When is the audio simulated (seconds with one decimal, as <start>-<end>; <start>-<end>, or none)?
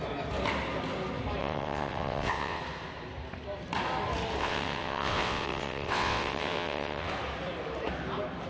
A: 1.4-2.6; 4.4-7.1